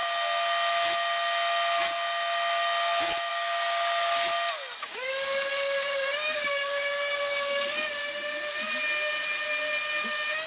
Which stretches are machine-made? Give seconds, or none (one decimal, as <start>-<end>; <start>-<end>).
3.3-4.3; 4.8-8.0